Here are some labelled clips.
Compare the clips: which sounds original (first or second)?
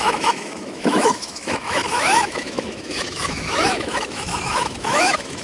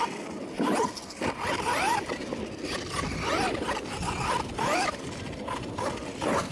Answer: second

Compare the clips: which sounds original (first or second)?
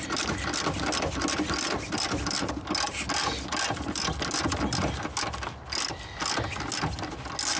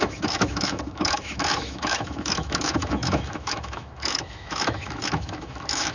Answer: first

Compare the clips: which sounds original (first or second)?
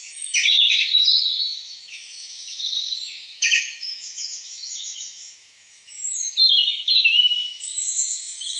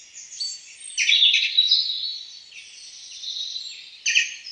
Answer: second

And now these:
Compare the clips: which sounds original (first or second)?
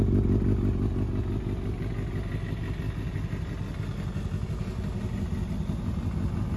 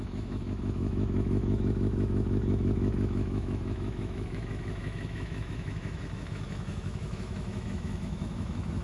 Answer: first